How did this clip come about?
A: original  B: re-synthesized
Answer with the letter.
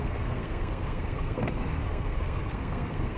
B